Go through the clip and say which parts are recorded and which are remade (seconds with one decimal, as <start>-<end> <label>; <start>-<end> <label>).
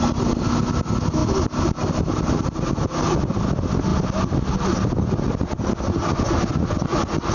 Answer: 0.0-7.3 recorded